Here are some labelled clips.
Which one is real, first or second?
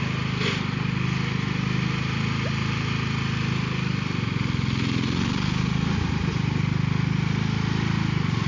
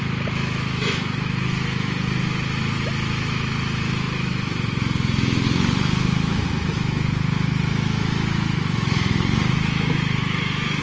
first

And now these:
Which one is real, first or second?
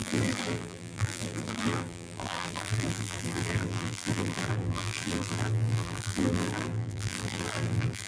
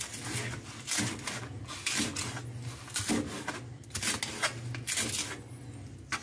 second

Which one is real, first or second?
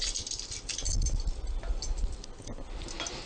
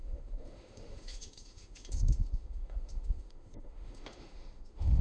first